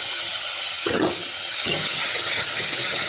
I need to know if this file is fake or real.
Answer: fake